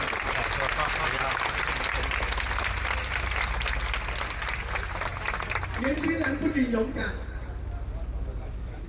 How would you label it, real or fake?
real